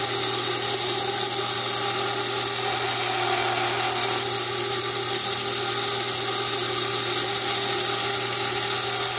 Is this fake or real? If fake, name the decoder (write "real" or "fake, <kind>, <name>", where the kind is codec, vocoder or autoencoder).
real